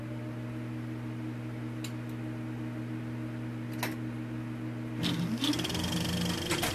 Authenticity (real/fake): real